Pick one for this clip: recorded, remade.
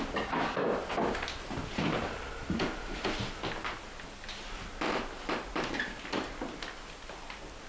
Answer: recorded